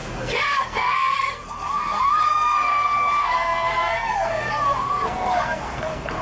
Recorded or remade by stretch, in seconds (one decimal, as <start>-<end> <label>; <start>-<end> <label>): 0.0-6.2 remade